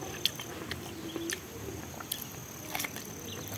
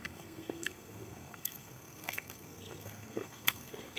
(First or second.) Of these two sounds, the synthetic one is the second